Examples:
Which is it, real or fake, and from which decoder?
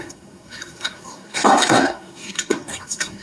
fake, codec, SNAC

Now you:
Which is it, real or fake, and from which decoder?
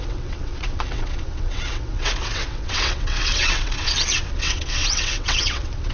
fake, vocoder, WaveNeXt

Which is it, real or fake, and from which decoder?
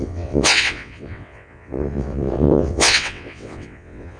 fake, vocoder, WaveNeXt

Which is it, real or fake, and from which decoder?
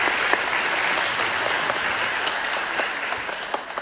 real